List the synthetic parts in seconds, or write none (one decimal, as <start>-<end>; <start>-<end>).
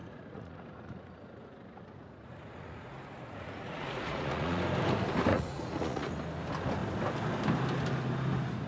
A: 0.0-4.6; 5.3-6.1